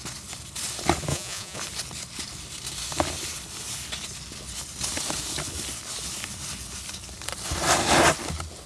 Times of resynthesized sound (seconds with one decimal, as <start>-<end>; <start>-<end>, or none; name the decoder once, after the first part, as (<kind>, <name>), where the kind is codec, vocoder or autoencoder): 1.1-1.6 (vocoder, Vocos)